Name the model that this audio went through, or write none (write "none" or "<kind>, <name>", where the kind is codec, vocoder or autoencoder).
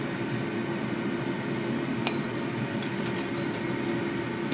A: none